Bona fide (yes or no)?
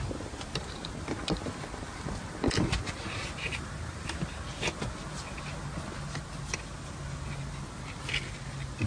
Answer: yes